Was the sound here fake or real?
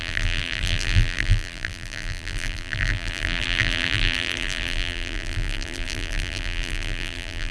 fake